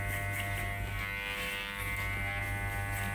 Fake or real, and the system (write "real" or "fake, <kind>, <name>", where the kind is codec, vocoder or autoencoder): real